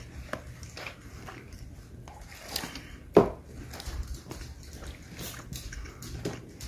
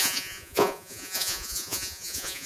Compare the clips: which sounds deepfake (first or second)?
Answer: second